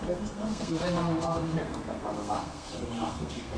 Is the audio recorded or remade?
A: remade